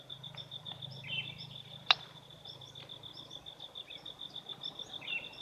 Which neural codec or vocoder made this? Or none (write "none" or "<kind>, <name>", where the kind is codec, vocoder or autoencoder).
none